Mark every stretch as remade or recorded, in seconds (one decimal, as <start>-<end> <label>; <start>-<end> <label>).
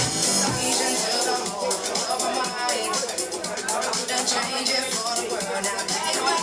0.0-6.4 recorded